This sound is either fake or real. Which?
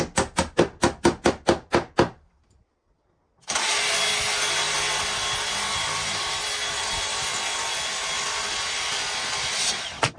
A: real